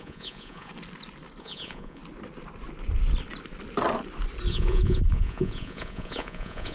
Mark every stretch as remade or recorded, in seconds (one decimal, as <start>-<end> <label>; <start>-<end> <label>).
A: 0.0-0.7 remade; 0.7-1.4 recorded; 1.4-2.0 remade; 2.0-4.5 recorded; 4.5-6.7 remade